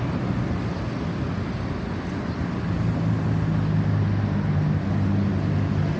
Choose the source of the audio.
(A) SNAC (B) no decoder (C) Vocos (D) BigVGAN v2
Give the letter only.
B